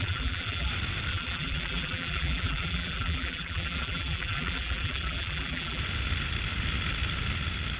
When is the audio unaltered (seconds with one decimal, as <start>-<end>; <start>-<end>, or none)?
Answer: 0.7-1.1; 5.8-7.8